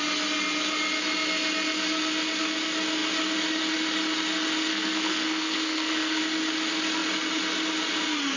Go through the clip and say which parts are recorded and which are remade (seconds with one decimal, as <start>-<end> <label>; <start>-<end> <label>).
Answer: 0.0-4.7 recorded; 4.7-6.2 remade; 6.2-8.4 recorded